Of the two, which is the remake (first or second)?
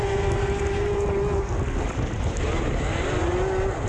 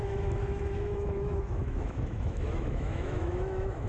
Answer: second